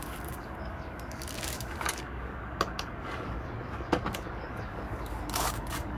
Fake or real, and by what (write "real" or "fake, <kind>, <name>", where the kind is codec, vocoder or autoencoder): fake, codec, DAC